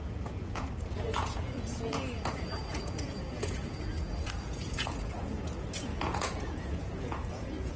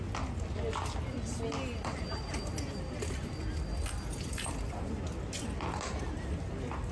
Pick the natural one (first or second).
second